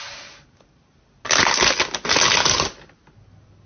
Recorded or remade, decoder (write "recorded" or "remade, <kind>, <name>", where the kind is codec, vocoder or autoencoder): recorded